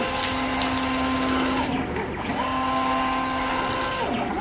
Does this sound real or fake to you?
real